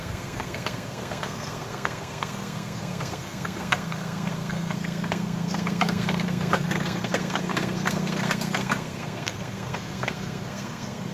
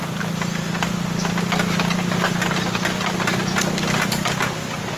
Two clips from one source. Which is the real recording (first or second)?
second